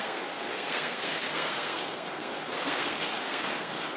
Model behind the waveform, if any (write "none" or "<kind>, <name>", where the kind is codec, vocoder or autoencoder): codec, SNAC